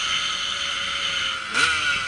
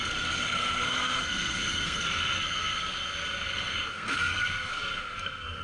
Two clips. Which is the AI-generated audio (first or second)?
second